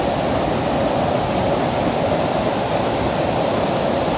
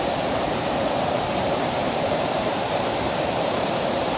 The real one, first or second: first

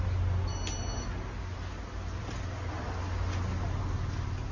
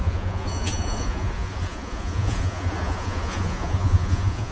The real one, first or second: first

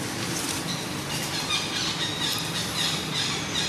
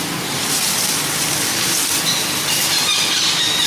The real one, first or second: first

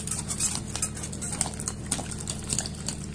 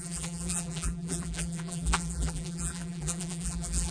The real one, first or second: first